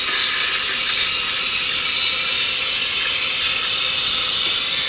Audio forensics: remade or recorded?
recorded